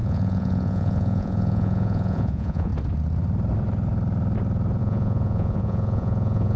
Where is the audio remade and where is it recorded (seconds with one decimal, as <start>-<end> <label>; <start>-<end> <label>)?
0.0-2.7 remade; 2.7-4.8 recorded; 4.8-6.6 remade